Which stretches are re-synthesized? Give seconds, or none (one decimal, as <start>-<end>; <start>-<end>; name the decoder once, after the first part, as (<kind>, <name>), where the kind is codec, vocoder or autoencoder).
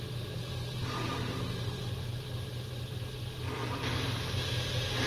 3.6-4.5 (vocoder, BigVGAN v2)